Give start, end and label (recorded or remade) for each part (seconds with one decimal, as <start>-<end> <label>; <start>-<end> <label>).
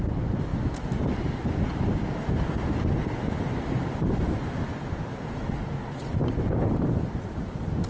0.0-0.5 remade; 0.5-4.8 recorded; 4.8-7.9 remade